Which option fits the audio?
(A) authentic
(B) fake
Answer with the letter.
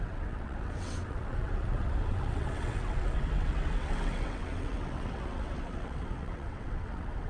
B